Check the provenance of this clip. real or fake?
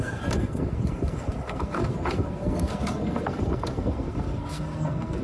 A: fake